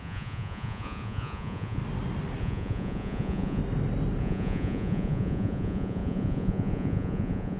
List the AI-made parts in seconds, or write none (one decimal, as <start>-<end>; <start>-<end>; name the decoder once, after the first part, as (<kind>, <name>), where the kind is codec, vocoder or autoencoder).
0.0-1.8 (vocoder, Vocos); 2.4-3.6; 4.2-7.6